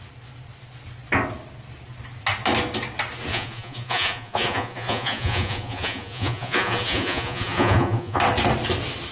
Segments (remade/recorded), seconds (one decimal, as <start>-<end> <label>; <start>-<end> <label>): 0.0-3.3 recorded; 3.3-8.2 remade; 8.2-9.1 recorded